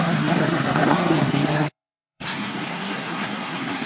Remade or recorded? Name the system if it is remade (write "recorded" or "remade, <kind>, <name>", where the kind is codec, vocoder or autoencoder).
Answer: remade, codec, SNAC